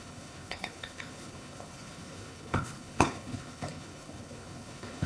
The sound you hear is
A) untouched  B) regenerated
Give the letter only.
B